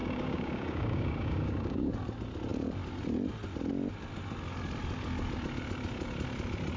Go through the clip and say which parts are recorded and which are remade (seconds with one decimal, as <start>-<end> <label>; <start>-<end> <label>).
0.0-1.9 remade; 1.9-6.8 recorded